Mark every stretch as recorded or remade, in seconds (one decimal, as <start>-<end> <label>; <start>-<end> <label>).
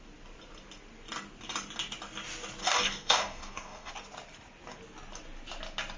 0.0-2.6 recorded; 2.6-3.9 remade; 3.9-6.0 recorded